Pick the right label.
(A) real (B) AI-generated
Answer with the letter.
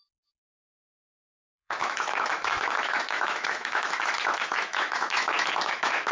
B